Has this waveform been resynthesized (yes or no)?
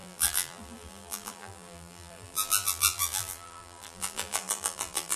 yes